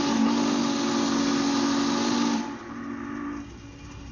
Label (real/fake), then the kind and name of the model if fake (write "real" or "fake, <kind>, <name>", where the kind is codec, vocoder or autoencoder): real